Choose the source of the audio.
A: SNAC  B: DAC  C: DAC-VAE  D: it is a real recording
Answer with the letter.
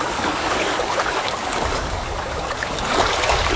B